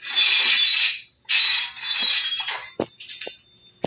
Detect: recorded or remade recorded